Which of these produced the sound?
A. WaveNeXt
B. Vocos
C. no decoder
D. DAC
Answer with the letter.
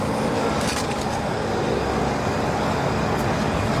D